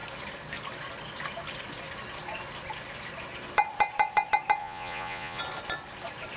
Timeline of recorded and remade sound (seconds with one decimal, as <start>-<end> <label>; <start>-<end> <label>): 0.0-4.6 recorded; 4.6-5.4 remade; 5.4-6.4 recorded